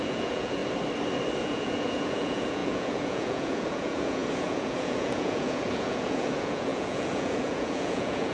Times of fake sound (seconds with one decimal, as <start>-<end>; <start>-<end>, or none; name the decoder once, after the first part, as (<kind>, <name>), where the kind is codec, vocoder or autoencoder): 0.0-0.6 (vocoder, Vocos); 1.4-8.3